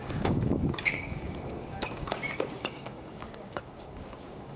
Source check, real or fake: fake